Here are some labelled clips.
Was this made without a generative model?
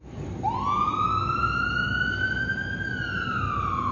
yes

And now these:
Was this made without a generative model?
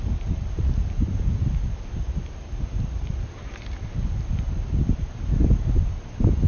yes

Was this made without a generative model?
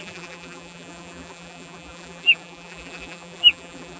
no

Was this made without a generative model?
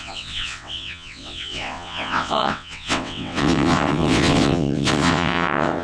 no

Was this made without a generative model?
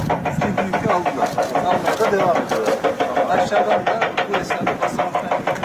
yes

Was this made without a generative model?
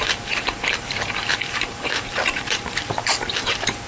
no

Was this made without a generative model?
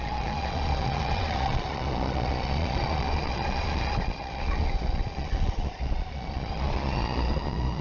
no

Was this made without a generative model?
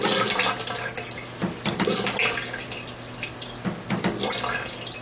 yes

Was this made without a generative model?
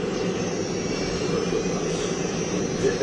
no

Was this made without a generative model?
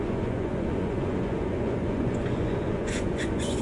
no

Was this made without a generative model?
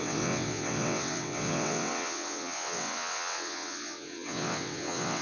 no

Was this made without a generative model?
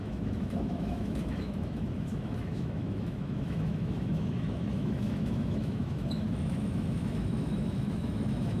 no